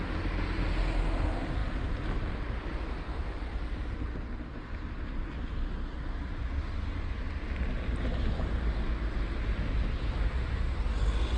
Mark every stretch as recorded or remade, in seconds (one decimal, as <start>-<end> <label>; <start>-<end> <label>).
0.0-11.4 recorded